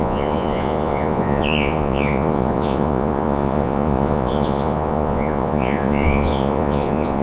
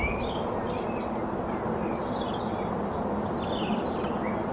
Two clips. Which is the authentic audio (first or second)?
second